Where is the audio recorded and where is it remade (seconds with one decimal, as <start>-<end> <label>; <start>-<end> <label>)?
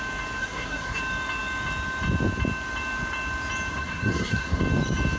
0.0-0.4 recorded; 0.4-1.0 remade; 1.0-3.7 recorded; 3.7-4.6 remade; 4.6-5.2 recorded